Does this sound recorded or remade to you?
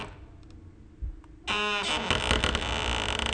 recorded